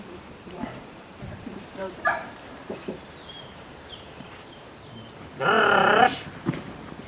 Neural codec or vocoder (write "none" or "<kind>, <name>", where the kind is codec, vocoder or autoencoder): vocoder, BigVGAN v2